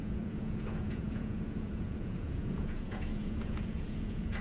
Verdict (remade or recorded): remade